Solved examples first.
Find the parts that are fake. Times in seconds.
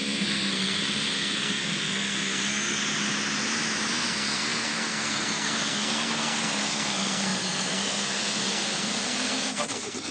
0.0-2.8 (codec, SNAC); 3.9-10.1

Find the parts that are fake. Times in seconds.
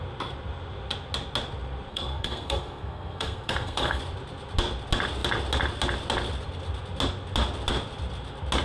1.9-4.0 (codec, SNAC)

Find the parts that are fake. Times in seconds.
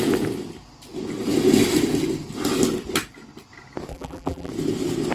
3.9-4.5 (vocoder, BigVGAN v2)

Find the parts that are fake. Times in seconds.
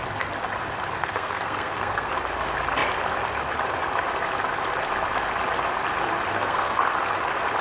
1.0-2.1 (codec, SNAC); 6.3-6.8